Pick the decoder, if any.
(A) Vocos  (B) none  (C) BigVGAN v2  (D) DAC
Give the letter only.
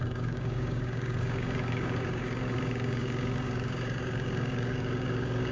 D